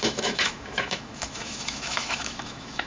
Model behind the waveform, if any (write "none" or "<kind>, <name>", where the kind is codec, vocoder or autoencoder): autoencoder, DAC-VAE